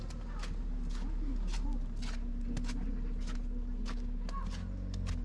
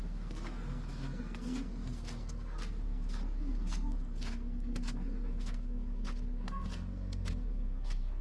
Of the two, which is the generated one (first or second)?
second